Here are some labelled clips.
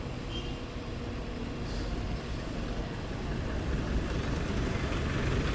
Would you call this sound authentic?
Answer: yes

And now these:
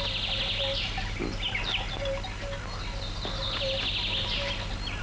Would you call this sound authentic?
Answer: yes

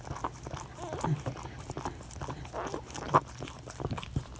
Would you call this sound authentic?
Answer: yes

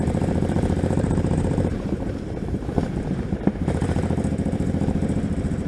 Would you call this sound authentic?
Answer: no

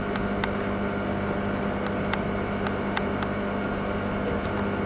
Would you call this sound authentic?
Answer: yes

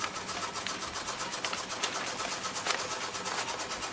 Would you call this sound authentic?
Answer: yes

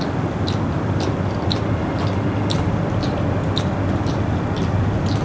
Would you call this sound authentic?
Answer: yes